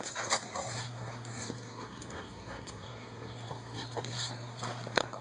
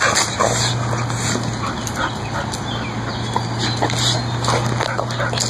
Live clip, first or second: second